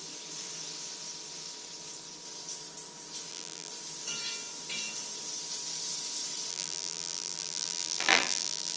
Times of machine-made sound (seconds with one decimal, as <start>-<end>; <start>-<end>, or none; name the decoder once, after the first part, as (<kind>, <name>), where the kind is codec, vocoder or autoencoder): 3.3-3.7 (vocoder, BigVGAN v2); 6.5-8.8